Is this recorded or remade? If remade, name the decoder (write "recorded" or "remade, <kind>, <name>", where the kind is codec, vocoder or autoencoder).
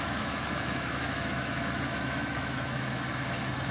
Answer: remade, autoencoder, DAC-VAE